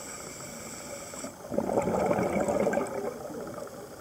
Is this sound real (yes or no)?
yes